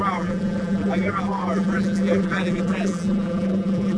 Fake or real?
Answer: fake